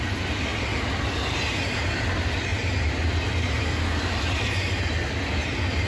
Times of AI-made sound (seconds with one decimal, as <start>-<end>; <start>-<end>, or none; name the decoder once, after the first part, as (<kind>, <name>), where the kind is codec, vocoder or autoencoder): none